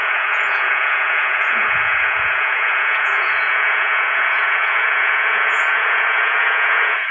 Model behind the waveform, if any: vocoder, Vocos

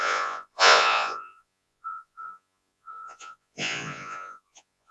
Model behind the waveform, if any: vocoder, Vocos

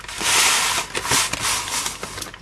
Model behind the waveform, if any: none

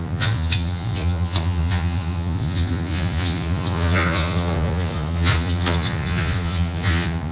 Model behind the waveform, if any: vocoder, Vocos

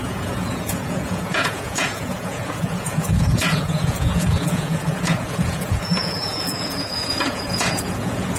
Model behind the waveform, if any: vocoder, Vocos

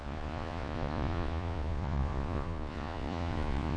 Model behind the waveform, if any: vocoder, Vocos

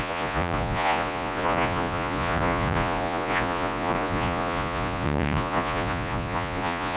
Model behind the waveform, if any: vocoder, Vocos